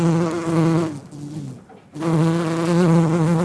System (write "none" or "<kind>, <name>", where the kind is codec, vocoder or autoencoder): none